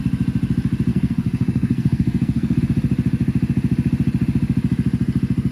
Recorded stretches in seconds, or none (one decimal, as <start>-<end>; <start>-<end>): 0.0-0.9; 2.6-5.5